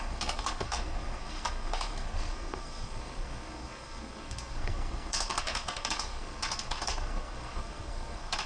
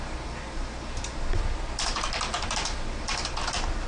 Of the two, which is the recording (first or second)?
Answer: second